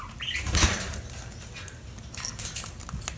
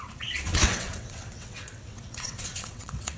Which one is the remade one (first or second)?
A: second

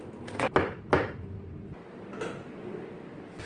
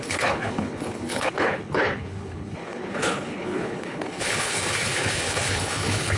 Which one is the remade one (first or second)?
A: second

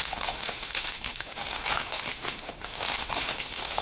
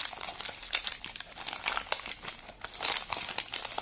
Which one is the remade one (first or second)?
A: first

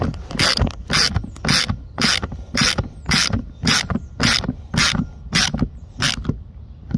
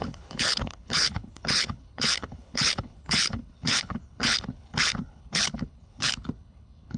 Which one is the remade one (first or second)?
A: second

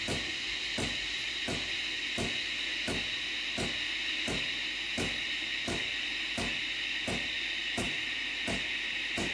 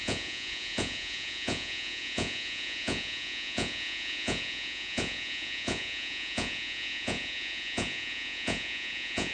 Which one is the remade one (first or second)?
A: second